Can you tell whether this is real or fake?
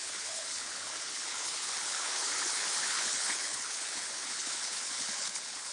fake